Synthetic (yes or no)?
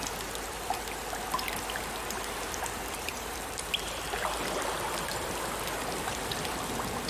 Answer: yes